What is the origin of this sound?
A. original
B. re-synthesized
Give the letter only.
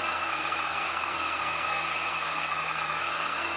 B